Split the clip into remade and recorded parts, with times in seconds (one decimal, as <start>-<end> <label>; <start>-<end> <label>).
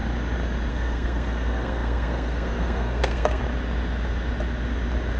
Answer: 0.0-0.7 recorded; 0.7-3.4 remade; 3.4-5.2 recorded